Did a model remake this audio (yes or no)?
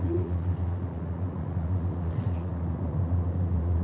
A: yes